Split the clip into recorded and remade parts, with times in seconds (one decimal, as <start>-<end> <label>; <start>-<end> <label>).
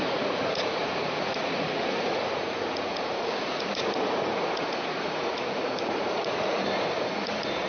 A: 0.0-7.7 remade